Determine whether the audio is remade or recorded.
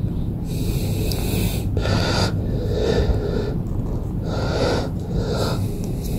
recorded